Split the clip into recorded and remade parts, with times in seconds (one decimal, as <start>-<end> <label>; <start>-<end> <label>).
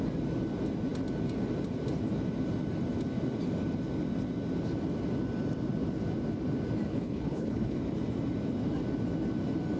0.0-6.9 recorded; 6.9-7.8 remade; 7.8-9.8 recorded